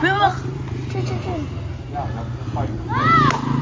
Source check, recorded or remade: recorded